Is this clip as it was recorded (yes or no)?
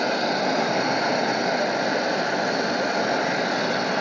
yes